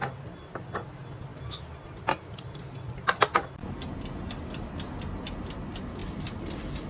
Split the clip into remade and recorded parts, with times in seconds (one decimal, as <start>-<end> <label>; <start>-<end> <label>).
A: 0.0-6.0 recorded; 6.0-6.9 remade